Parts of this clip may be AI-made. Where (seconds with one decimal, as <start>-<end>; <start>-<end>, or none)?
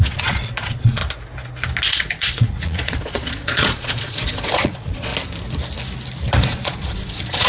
0.0-1.0; 1.9-5.1; 6.4-7.5